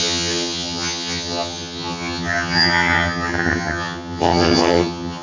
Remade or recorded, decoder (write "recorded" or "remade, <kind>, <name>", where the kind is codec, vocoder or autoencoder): remade, vocoder, HiFi-GAN